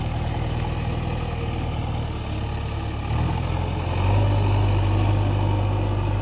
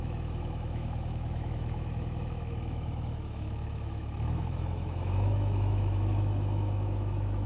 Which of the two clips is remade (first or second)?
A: second